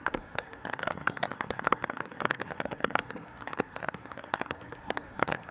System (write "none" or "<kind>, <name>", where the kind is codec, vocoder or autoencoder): codec, SNAC